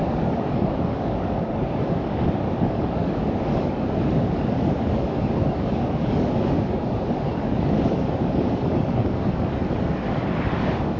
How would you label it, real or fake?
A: fake